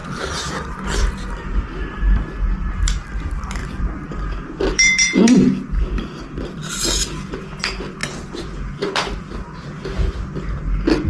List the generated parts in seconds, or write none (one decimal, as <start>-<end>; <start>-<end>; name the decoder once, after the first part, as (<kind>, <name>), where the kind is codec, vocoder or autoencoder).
0.0-2.7 (vocoder, BigVGAN v2); 3.6-6.7